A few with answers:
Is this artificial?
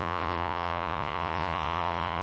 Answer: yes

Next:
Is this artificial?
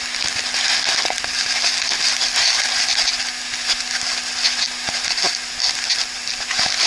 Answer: no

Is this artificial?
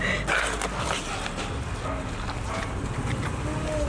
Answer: no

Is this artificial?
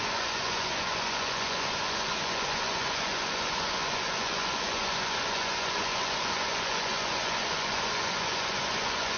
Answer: yes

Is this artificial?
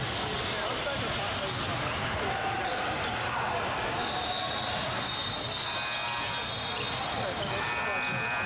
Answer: no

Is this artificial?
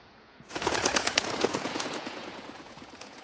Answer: yes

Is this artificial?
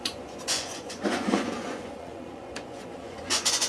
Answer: yes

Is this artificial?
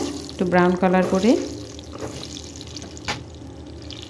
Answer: no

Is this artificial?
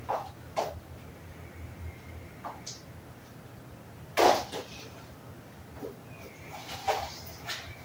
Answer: no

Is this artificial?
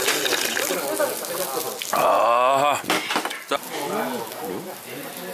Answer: no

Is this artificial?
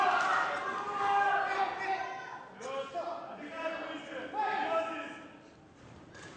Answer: no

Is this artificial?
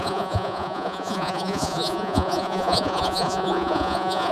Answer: yes